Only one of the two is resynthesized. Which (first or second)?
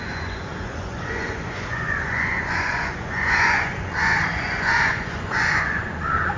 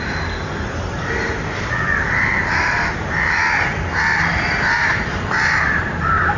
first